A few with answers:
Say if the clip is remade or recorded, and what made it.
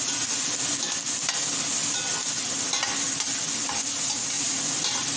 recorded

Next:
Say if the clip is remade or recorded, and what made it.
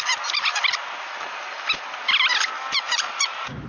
recorded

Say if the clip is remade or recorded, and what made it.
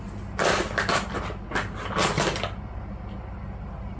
recorded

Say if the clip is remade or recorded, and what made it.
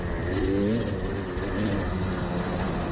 recorded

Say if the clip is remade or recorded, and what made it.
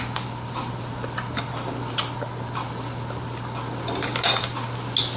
recorded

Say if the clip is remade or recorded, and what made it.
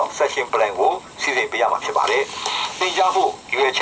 recorded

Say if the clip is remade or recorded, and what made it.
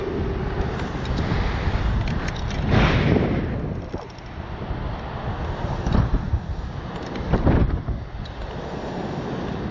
recorded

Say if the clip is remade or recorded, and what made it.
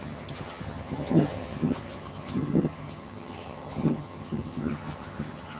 remade, vocoder, HiFi-GAN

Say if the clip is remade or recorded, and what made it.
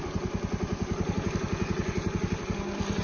recorded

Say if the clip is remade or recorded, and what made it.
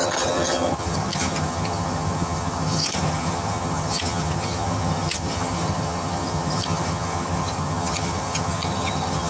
remade, vocoder, HiFi-GAN